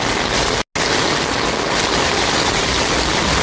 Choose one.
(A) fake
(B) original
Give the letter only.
B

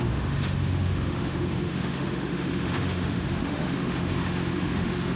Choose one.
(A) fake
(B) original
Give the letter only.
A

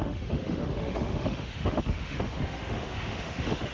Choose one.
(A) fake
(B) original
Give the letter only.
A